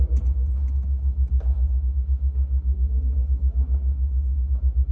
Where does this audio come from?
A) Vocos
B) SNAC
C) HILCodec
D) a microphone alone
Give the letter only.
D